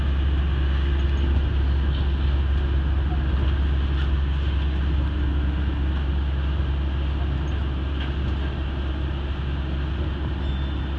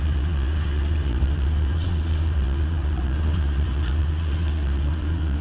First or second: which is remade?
second